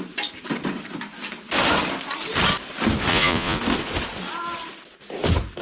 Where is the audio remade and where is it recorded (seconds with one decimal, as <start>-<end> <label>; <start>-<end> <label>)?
0.0-3.1 recorded; 3.1-3.6 remade; 3.6-5.6 recorded